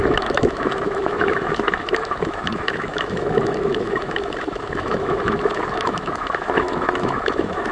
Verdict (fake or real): fake